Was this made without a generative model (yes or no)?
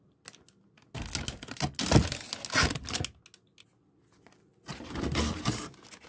yes